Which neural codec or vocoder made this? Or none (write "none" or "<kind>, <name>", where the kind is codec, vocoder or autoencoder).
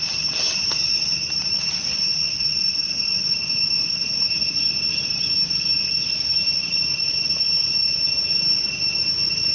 none